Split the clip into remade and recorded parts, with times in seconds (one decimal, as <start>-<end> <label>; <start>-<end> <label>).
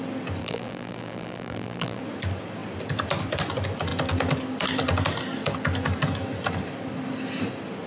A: 0.0-0.4 recorded; 0.4-2.0 remade; 2.0-7.9 recorded